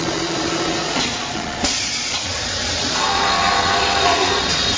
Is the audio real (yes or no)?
no